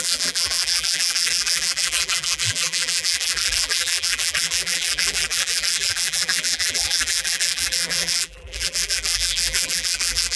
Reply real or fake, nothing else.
fake